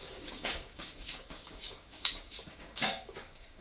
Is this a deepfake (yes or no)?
yes